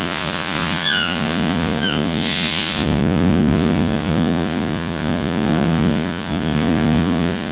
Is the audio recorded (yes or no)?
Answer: no